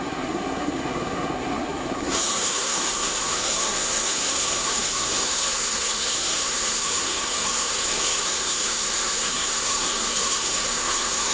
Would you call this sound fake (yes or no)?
yes